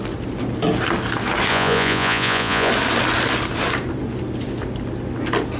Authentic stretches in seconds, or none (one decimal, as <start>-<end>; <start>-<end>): 0.0-1.5; 2.7-5.6